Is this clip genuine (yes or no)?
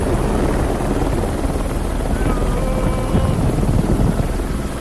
yes